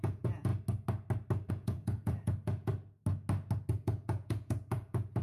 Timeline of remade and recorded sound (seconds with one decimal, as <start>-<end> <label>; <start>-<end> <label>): 0.0-0.5 remade; 0.5-1.5 recorded; 1.5-2.7 remade; 2.7-3.7 recorded; 3.7-5.2 remade